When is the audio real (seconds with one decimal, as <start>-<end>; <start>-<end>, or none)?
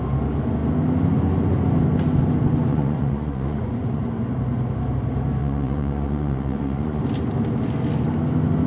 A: 0.0-2.7; 4.0-5.4; 7.0-8.7